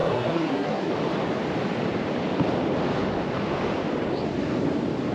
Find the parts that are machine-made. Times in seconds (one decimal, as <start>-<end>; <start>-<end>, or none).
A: 0.0-0.9